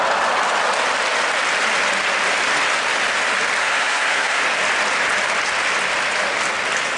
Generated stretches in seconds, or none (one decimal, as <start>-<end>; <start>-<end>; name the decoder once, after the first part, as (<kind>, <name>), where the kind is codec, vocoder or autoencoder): 3.6-4.4 (codec, SNAC)